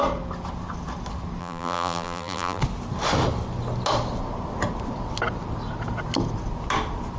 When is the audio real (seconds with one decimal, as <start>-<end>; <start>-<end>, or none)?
0.0-1.4; 2.6-7.2